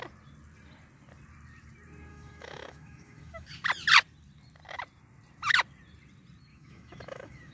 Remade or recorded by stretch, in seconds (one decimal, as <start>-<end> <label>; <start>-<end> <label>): 0.0-2.1 recorded; 2.1-3.5 remade; 3.5-6.5 recorded; 6.5-7.5 remade